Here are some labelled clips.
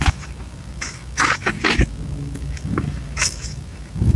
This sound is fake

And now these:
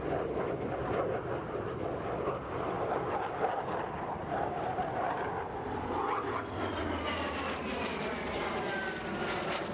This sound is real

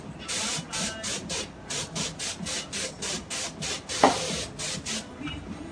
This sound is real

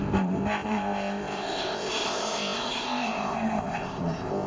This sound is fake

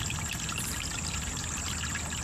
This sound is real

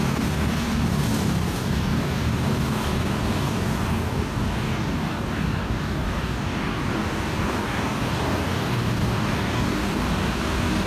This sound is fake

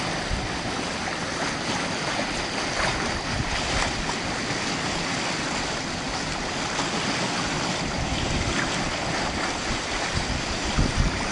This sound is real